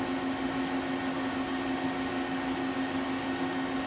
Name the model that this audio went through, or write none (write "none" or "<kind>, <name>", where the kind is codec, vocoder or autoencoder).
none